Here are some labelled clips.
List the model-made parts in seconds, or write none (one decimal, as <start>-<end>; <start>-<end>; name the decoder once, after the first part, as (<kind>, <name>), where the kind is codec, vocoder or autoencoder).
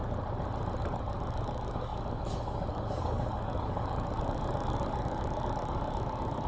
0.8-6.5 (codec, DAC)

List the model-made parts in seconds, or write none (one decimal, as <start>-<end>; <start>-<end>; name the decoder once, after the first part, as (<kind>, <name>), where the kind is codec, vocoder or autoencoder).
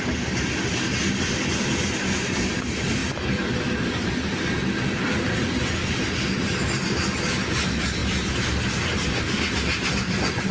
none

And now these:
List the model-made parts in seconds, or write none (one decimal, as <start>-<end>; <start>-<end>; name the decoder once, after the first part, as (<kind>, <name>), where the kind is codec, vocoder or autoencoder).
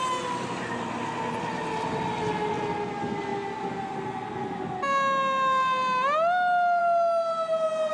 none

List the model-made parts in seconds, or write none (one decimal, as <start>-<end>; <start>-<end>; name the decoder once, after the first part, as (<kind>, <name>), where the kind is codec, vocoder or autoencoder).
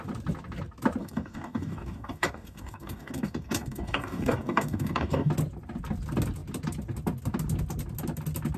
1.0-5.3 (codec, DAC)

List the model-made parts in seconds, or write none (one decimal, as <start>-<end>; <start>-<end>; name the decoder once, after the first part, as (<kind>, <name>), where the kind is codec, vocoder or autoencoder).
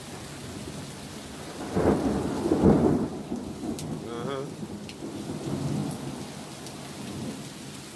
none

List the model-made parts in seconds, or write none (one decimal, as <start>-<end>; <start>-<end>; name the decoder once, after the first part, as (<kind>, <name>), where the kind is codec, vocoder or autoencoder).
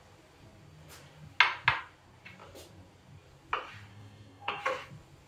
3.9-4.6 (codec, DAC)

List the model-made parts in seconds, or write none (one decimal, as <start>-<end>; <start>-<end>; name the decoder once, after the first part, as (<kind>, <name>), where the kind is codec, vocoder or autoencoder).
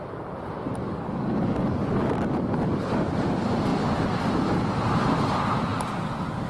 0.8-2.7 (codec, DAC)